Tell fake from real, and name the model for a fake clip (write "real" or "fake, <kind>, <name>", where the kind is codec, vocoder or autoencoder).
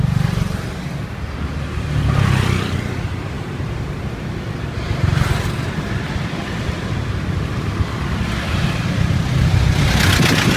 real